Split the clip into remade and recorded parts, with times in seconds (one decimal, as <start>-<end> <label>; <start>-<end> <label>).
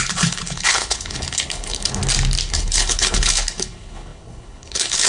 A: 0.0-2.0 remade; 2.0-2.5 recorded; 2.5-5.1 remade